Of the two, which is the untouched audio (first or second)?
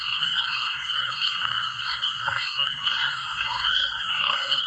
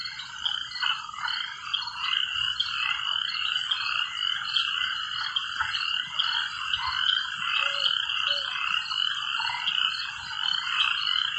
second